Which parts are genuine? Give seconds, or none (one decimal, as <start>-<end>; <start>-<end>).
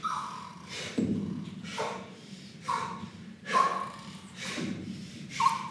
none